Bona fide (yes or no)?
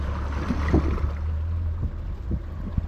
yes